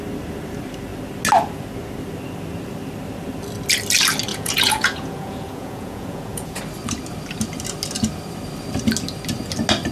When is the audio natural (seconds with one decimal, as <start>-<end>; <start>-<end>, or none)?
0.0-4.3; 6.6-9.9